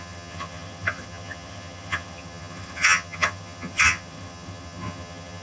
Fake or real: fake